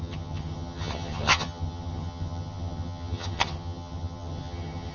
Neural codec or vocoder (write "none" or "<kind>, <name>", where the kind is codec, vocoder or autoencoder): vocoder, HiFi-GAN